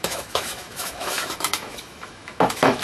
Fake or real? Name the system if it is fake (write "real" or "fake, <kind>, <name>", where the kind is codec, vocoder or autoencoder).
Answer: fake, autoencoder, DAC-VAE